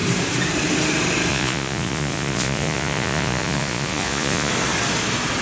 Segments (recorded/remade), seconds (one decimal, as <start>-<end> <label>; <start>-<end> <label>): 0.0-1.3 recorded; 1.3-4.5 remade; 4.5-5.4 recorded